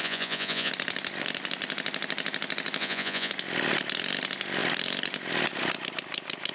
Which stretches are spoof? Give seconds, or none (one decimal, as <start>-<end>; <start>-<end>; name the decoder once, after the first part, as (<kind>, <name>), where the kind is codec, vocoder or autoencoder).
0.0-0.7 (vocoder, Vocos); 2.8-3.3